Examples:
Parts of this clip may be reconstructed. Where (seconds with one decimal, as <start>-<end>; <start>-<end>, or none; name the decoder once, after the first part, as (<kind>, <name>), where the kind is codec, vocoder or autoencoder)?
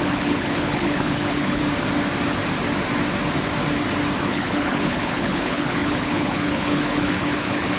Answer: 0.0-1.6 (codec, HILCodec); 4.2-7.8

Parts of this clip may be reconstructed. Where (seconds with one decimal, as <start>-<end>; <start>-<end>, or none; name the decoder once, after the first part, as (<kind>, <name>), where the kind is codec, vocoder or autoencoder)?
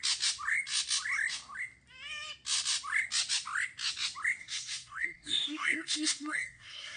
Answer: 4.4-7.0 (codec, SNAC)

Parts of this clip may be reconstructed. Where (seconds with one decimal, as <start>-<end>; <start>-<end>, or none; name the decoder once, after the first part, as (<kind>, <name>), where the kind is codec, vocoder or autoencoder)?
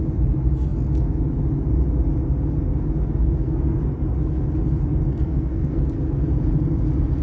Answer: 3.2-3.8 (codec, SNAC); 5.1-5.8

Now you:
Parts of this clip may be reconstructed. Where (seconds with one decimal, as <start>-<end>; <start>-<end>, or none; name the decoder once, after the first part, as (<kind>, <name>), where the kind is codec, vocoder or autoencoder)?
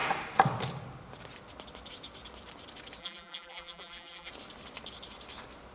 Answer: 3.0-4.3 (vocoder, BigVGAN v2)